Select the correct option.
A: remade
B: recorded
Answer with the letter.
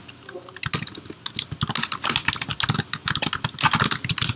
B